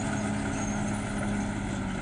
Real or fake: real